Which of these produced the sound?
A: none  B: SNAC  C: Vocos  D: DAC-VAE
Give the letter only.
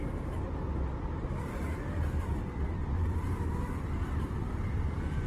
A